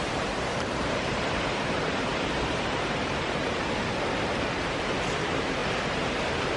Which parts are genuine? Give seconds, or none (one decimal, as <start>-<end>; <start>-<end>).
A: none